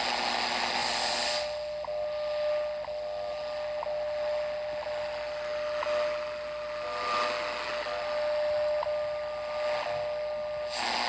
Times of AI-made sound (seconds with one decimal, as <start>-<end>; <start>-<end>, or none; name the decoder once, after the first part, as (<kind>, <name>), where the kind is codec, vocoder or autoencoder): none